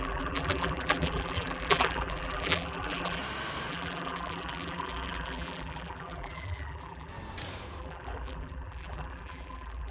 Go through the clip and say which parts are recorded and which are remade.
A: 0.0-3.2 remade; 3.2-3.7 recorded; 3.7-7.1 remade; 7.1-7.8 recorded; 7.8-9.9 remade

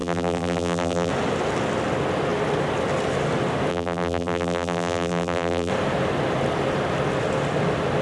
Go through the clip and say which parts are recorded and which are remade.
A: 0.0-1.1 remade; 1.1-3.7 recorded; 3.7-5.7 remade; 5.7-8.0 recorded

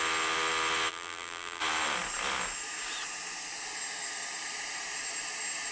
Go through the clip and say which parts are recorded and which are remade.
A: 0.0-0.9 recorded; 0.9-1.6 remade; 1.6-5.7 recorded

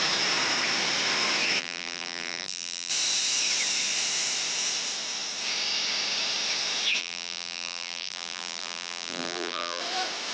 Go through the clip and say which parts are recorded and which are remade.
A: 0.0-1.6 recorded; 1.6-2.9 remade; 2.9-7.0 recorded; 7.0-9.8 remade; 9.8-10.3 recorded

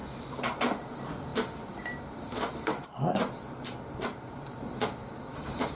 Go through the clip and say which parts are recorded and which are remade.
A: 0.0-0.9 recorded; 0.9-5.8 remade